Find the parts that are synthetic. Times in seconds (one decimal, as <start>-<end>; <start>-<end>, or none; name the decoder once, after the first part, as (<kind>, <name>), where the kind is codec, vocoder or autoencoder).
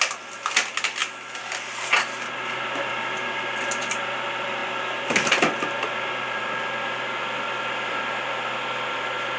none